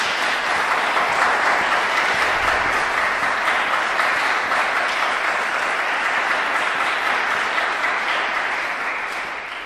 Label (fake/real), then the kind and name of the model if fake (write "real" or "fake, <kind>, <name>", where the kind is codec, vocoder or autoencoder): real